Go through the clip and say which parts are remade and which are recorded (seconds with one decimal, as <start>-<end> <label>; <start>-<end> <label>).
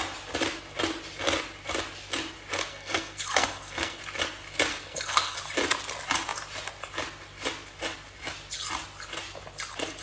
0.0-2.7 recorded; 2.7-4.0 remade; 4.0-4.7 recorded; 4.7-5.4 remade; 5.4-10.0 recorded